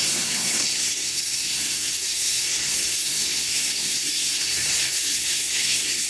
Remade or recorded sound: remade